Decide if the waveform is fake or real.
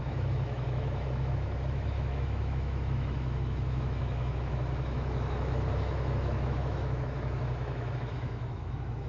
fake